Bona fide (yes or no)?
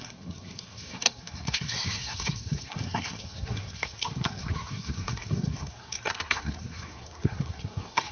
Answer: no